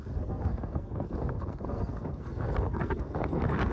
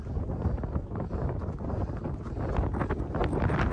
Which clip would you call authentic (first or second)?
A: second